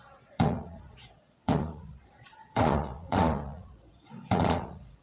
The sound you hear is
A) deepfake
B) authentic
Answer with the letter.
A